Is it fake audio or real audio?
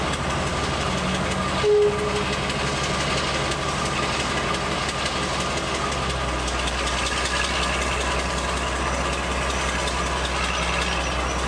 real